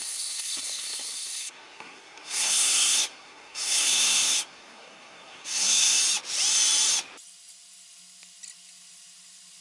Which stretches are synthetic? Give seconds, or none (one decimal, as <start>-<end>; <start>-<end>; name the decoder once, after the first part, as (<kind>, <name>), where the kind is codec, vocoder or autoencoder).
0.0-6.0 (codec, SNAC)